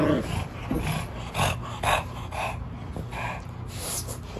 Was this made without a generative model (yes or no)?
yes